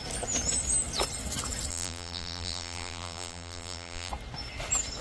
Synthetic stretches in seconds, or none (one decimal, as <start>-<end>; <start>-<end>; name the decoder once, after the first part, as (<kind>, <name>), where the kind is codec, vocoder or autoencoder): 1.7-4.1 (vocoder, BigVGAN v2)